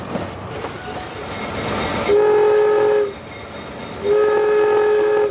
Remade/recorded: recorded